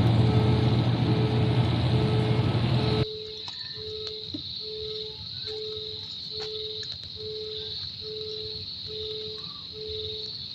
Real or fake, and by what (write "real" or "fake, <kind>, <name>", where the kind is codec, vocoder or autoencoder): real